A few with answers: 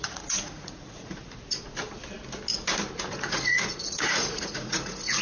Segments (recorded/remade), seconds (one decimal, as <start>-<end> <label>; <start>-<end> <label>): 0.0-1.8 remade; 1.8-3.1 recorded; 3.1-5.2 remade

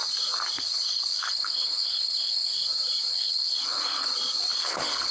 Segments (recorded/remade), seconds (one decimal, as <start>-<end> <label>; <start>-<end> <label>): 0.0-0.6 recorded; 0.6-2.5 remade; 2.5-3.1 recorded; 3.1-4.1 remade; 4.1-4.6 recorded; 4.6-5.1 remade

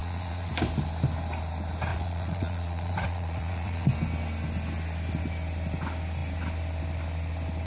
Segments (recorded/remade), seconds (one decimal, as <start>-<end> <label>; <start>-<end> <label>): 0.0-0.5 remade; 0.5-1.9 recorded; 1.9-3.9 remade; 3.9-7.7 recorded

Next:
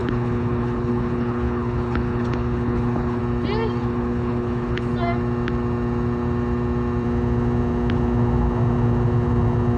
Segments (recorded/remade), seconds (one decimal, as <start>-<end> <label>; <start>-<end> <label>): 0.0-3.2 remade; 3.2-3.8 recorded; 3.8-4.9 remade; 4.9-9.8 recorded